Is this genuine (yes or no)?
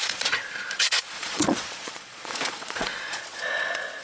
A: no